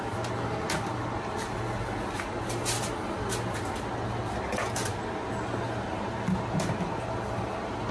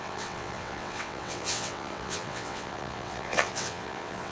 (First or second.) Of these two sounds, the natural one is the first